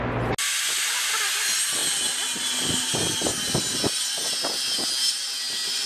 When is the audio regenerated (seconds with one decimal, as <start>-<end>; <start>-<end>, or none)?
none